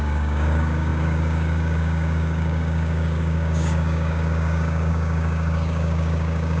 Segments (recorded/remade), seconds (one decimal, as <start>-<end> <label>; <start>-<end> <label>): 0.0-6.6 remade